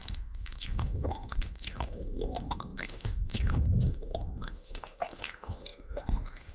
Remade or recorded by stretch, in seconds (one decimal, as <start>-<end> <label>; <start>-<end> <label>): 0.0-6.5 remade